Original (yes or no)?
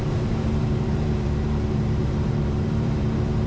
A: no